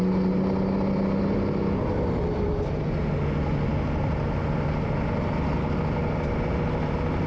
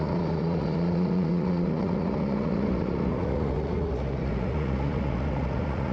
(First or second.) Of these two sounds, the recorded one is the first